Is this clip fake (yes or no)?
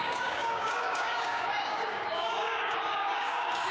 yes